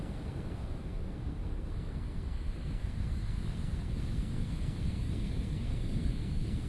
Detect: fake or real fake